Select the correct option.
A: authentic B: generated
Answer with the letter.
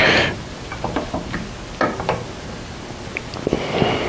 A